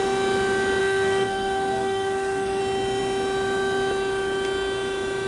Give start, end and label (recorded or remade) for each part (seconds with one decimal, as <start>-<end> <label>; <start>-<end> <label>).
0.0-0.8 recorded; 0.8-2.6 remade; 2.6-5.3 recorded

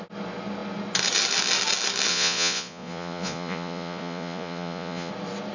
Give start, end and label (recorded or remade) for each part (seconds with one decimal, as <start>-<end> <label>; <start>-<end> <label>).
0.0-2.1 recorded; 2.1-5.1 remade; 5.1-5.5 recorded

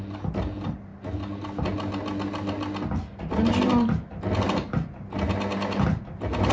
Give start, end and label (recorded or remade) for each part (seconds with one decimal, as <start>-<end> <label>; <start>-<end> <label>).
0.0-6.5 recorded